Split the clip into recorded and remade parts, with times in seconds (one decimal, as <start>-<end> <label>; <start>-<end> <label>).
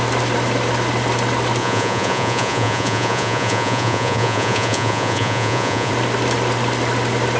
0.0-1.6 recorded; 1.6-5.9 remade; 5.9-7.4 recorded